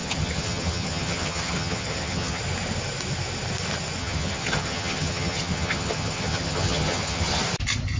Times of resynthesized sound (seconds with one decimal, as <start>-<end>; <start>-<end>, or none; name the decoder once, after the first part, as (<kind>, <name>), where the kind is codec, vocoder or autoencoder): 0.0-2.4 (vocoder, HiFi-GAN); 4.0-7.4